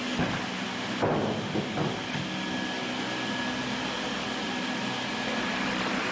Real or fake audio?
real